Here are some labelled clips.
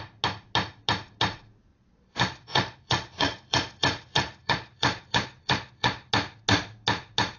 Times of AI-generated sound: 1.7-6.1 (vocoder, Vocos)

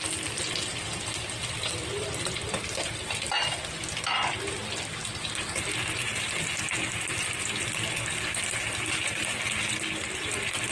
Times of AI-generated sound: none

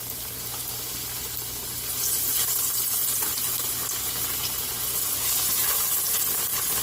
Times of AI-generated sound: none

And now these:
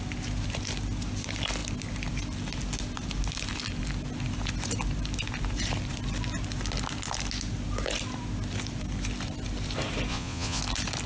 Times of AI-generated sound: 10.1-10.6 (vocoder, Vocos)

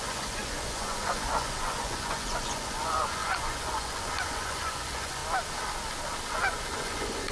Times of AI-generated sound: 0.0-5.2 (vocoder, Vocos); 6.3-7.3

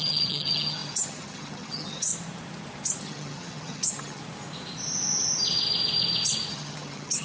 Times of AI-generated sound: 0.0-2.1 (vocoder, HiFi-GAN); 3.0-4.2; 6.5-7.2

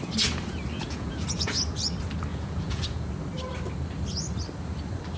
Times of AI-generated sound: 0.8-1.5 (vocoder, Vocos); 2.3-3.1